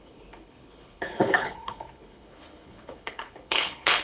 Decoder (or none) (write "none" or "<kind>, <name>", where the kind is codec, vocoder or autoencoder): codec, HILCodec